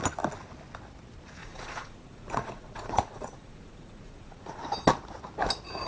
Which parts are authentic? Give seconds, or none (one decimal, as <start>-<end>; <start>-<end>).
0.0-1.4; 4.6-5.9

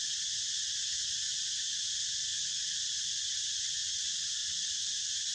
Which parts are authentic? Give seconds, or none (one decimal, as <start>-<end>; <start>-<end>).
0.0-4.4

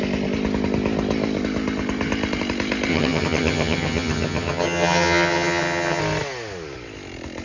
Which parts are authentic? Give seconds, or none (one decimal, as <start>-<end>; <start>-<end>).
0.0-2.9; 6.0-7.4

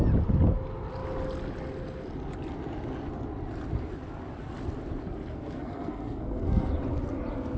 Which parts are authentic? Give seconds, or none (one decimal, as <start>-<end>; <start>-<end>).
0.0-5.3; 6.7-7.6

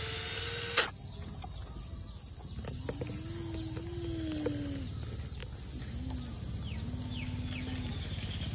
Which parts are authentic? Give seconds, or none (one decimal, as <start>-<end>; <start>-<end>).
0.0-8.5